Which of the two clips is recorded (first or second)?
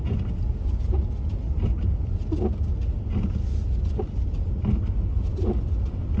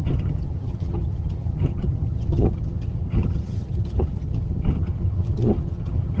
first